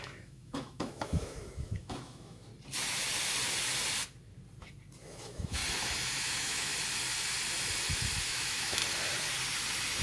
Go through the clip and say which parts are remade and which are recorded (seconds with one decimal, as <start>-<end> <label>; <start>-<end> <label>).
0.0-2.5 remade; 2.5-5.0 recorded; 5.0-5.6 remade; 5.6-6.2 recorded; 6.2-6.7 remade; 6.7-8.2 recorded; 8.2-8.8 remade; 8.8-10.0 recorded